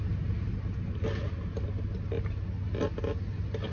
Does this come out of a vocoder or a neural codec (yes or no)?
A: no